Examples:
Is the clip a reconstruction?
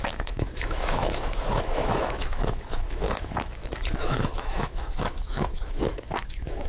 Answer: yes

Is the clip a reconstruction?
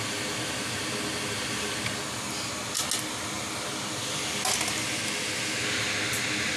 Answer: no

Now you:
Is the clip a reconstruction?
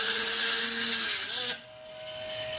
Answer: no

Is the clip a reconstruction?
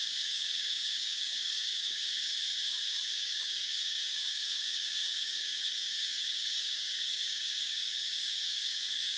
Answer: yes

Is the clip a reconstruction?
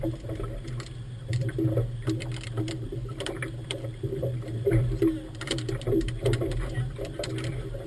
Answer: yes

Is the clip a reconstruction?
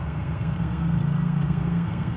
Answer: yes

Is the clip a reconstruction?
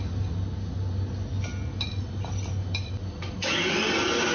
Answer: no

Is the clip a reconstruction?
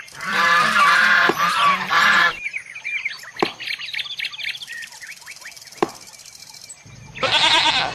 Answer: yes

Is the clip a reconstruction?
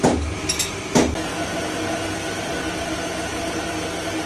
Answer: no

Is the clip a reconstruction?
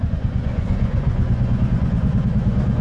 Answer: yes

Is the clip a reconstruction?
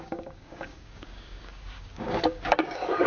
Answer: yes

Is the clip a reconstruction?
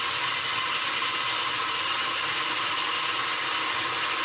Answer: no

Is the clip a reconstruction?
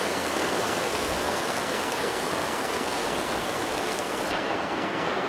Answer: yes